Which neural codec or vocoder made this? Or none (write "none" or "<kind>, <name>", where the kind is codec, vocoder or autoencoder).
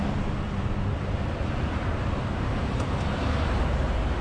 none